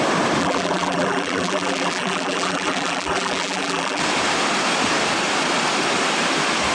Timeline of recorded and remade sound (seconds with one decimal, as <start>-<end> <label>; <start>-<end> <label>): 0.0-0.4 recorded; 0.4-4.0 remade; 4.0-6.7 recorded